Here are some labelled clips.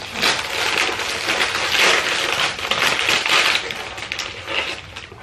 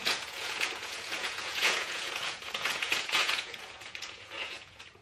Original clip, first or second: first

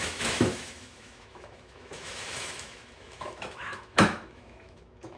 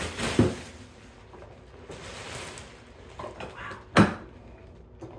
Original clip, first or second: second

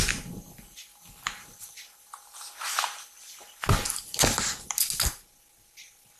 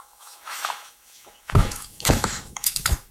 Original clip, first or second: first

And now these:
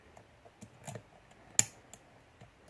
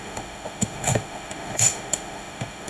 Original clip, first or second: first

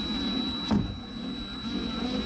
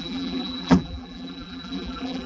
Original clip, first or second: first